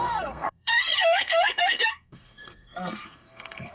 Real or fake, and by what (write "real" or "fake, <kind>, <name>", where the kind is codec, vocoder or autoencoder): fake, codec, SNAC